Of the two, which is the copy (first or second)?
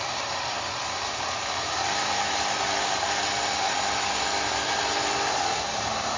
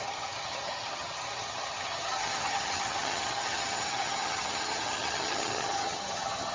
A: second